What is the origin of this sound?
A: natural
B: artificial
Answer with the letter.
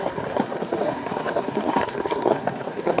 B